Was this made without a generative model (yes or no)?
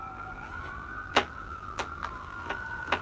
no